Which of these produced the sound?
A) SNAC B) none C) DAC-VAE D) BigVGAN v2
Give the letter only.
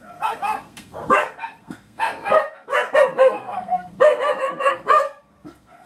A